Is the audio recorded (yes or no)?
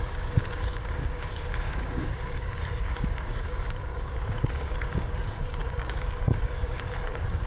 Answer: no